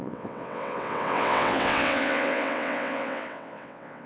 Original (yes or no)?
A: no